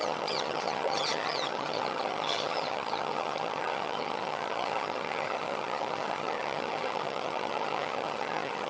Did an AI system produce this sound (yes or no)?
yes